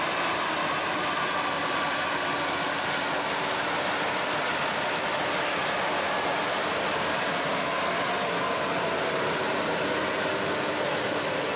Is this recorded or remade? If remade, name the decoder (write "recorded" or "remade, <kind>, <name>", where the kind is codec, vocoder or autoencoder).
recorded